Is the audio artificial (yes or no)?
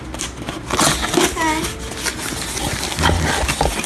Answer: no